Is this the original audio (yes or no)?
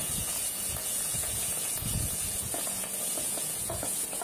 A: no